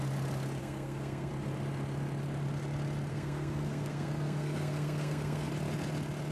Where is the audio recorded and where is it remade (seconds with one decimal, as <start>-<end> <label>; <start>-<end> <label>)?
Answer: 0.0-0.6 recorded; 0.6-1.3 remade; 1.3-3.1 recorded; 3.1-5.5 remade; 5.5-6.3 recorded